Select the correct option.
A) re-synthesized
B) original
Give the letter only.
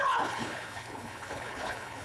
A